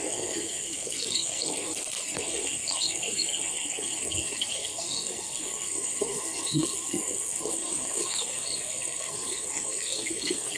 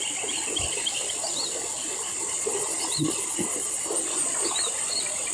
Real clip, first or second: second